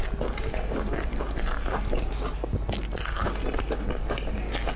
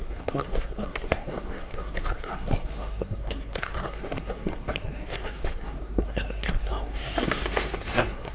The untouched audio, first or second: first